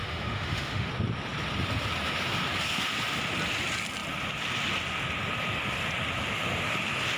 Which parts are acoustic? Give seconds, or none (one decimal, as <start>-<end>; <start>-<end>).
0.9-7.2